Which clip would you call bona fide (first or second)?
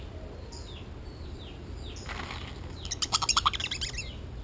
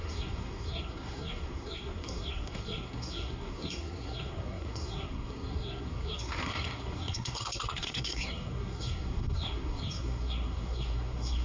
first